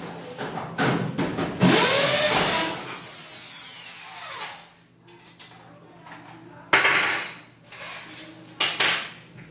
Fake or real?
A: real